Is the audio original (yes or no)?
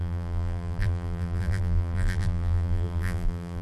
no